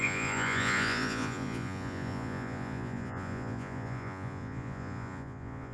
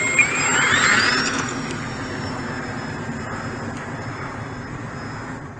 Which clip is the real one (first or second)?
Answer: second